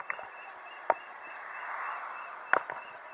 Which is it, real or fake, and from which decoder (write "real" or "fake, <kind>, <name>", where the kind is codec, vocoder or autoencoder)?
real